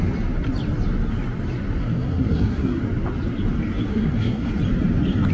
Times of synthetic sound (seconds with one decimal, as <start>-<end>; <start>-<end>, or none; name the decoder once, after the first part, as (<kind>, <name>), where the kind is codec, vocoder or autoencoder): 1.8-2.8 (codec, SNAC); 3.9-4.5